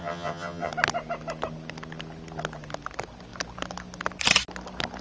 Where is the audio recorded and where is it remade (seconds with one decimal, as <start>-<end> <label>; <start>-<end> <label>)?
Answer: 0.0-0.7 remade; 0.7-5.0 recorded